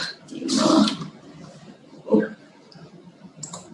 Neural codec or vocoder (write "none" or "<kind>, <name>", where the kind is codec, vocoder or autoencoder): none